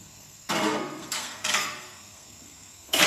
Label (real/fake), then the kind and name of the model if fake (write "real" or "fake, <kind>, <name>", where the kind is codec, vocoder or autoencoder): fake, codec, SNAC